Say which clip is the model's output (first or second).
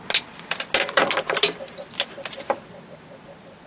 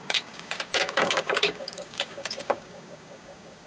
second